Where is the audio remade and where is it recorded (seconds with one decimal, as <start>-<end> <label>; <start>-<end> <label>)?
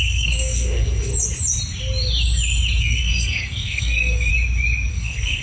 0.0-1.1 remade; 1.1-2.8 recorded; 2.8-4.3 remade; 4.3-4.9 recorded; 4.9-5.4 remade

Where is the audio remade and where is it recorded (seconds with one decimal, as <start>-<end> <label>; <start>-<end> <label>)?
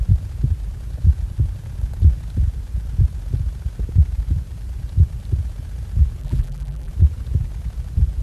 0.0-6.2 recorded; 6.2-6.9 remade; 6.9-8.2 recorded